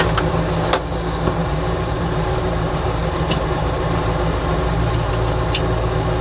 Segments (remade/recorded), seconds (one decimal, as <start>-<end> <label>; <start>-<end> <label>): 0.0-1.4 recorded; 1.4-5.1 remade; 5.1-6.2 recorded